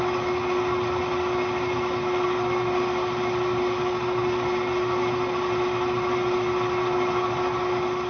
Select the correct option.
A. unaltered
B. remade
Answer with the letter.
A